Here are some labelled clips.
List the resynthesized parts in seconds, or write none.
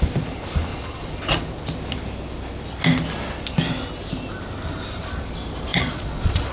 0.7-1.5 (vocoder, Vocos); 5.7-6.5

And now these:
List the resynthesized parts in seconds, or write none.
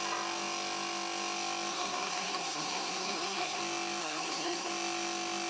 1.7-3.6 (codec, SNAC); 4.0-4.7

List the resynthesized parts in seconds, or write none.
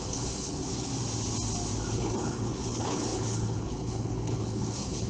0.0-0.9 (codec, HILCodec); 1.9-5.1